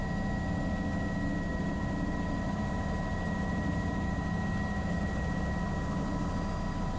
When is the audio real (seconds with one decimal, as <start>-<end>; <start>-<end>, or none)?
0.0-1.5; 5.4-7.0